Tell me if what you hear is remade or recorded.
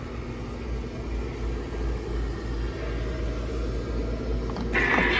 recorded